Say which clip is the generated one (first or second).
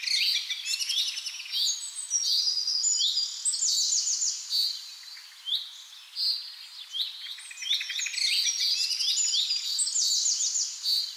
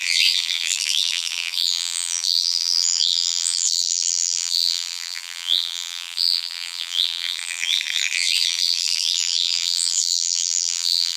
second